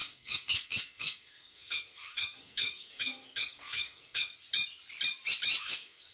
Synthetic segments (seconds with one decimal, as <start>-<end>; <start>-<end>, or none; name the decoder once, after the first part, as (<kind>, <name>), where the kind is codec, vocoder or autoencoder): 0.0-4.3 (codec, SNAC); 5.6-6.1